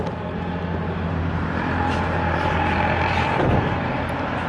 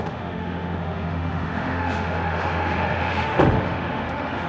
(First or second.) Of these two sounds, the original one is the first